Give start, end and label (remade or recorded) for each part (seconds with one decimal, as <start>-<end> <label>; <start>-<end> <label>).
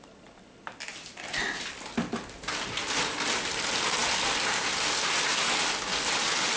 0.0-0.9 recorded; 0.9-1.4 remade; 1.4-6.6 recorded